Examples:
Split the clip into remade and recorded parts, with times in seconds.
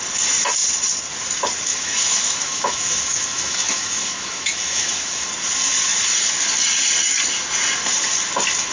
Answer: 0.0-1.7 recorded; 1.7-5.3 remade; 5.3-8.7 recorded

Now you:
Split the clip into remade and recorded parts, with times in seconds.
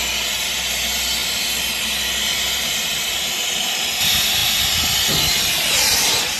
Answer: 0.0-6.4 recorded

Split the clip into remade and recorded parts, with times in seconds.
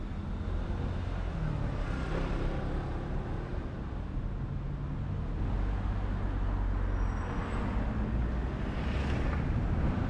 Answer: 0.0-10.1 recorded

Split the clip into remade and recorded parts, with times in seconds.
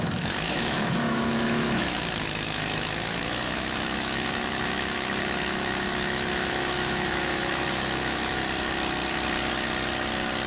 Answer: 0.0-8.4 remade; 8.4-10.5 recorded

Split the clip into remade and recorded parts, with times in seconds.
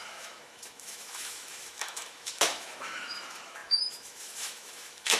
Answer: 0.0-5.2 remade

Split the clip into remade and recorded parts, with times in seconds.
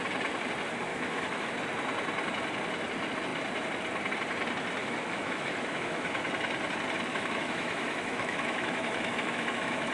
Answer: 0.0-0.9 recorded; 0.9-1.5 remade; 1.5-4.8 recorded; 4.8-6.1 remade; 6.1-7.1 recorded; 7.1-9.9 remade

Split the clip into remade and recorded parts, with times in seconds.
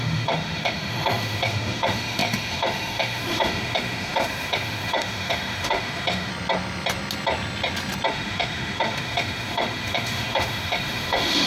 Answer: 0.0-6.3 remade; 6.3-8.1 recorded; 8.1-11.5 remade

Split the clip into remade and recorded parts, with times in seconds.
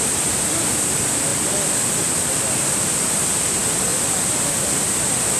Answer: 0.0-5.4 recorded